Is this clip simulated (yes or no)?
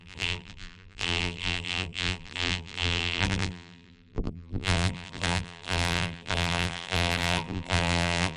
yes